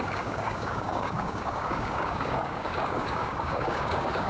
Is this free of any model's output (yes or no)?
no